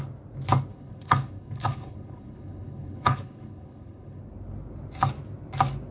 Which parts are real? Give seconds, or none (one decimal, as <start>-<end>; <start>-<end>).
0.0-0.7; 4.2-5.9

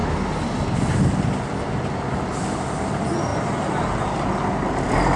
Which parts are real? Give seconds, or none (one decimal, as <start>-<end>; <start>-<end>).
0.0-5.2

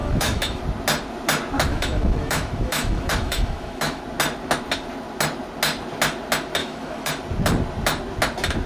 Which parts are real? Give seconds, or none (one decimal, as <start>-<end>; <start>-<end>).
0.6-1.7; 4.0-6.6; 7.1-8.7

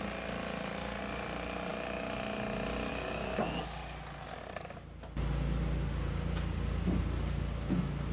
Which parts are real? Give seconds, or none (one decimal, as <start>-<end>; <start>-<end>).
0.0-8.1

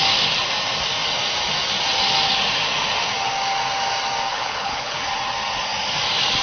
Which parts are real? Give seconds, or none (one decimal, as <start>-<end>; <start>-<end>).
0.0-4.3; 5.0-6.4

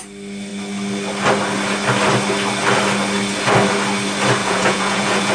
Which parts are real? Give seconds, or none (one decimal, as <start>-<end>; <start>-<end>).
0.0-4.4

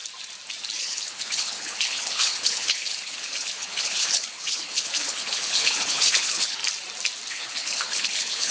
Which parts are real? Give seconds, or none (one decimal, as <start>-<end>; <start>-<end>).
0.0-0.8; 6.6-7.3